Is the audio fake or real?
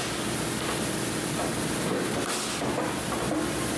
real